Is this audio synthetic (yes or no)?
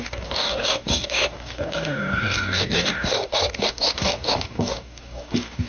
yes